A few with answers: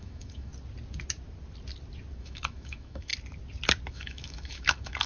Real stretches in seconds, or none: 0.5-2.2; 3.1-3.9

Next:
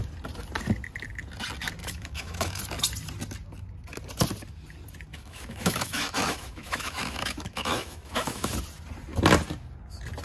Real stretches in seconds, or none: 0.0-1.8; 2.6-5.1; 8.5-10.2

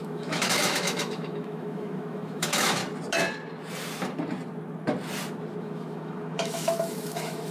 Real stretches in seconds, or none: 2.8-5.6

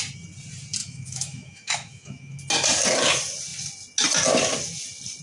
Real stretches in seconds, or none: 0.0-0.8; 2.4-5.2

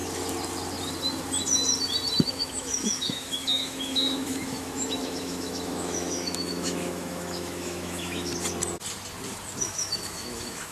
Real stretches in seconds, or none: 0.0-2.2; 8.3-9.6